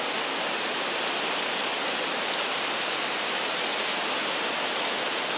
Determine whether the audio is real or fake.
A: real